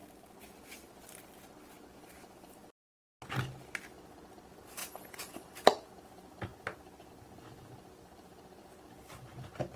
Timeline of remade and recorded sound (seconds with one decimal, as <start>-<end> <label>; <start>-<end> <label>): 0.0-4.8 recorded; 4.8-5.5 remade; 5.5-9.8 recorded

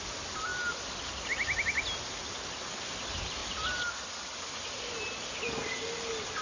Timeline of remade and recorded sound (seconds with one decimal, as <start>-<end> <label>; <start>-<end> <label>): 0.0-6.4 recorded